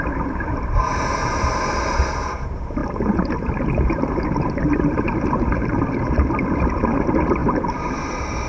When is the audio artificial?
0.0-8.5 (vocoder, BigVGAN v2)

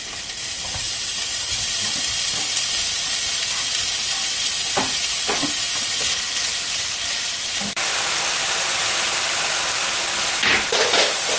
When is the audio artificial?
1.1-1.7 (vocoder, BigVGAN v2); 8.4-9.6

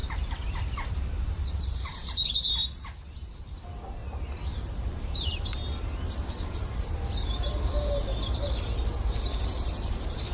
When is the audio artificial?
0.0-4.0 (vocoder, BigVGAN v2); 4.7-10.3

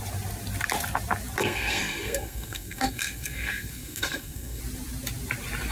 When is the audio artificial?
1.4-4.6 (codec, SNAC)

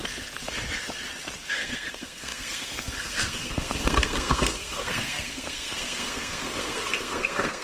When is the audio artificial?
1.5-7.6 (codec, SNAC)